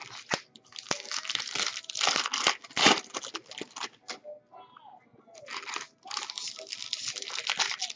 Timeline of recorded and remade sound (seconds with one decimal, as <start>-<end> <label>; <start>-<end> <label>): 0.0-8.0 recorded